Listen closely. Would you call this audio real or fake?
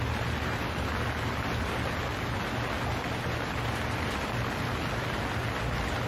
real